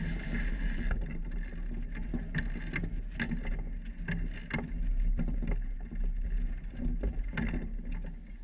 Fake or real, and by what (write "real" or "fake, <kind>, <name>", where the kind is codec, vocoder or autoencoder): real